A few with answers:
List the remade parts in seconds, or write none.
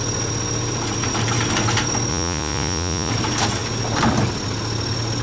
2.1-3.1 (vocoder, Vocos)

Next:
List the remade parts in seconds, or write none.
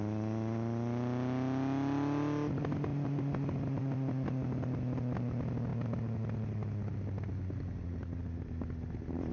none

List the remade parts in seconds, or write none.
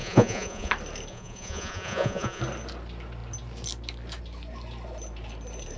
0.0-0.7 (vocoder, Vocos); 1.1-2.4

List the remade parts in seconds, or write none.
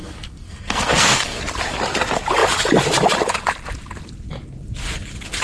0.0-1.4 (codec, SNAC)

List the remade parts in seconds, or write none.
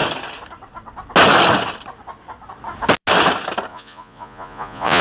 3.7-5.0 (vocoder, Vocos)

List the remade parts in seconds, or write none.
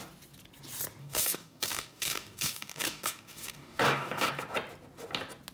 1.0-4.3 (codec, DAC)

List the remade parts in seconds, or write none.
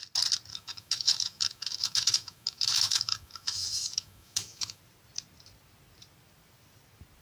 0.5-4.8 (autoencoder, DAC-VAE)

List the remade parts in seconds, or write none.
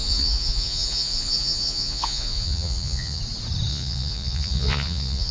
0.0-3.2 (vocoder, Vocos); 3.7-5.3